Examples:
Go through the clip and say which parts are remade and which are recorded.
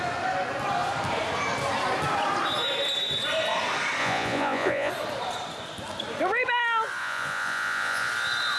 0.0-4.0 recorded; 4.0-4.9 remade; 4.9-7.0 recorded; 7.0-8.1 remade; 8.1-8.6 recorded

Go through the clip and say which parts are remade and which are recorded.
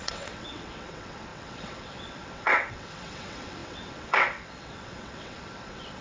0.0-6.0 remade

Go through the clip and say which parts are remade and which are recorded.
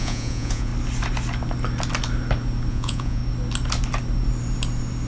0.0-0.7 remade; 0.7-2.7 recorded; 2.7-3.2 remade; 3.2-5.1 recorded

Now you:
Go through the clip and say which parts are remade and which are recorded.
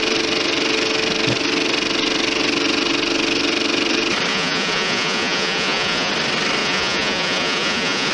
0.0-4.3 recorded; 4.3-6.1 remade; 6.1-6.6 recorded; 6.6-8.1 remade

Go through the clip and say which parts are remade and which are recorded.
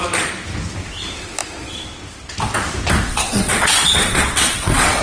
0.0-3.1 recorded; 3.1-5.0 remade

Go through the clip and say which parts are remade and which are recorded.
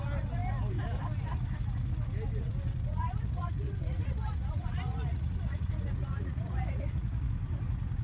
0.0-2.9 recorded; 2.9-7.3 remade; 7.3-8.0 recorded